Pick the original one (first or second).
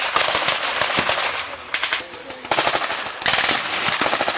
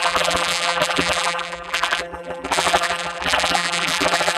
first